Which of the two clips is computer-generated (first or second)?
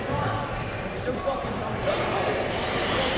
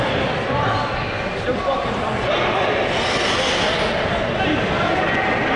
first